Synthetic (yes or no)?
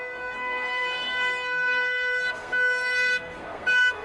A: yes